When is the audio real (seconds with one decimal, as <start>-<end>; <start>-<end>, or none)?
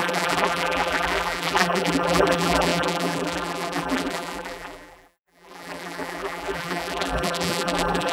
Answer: none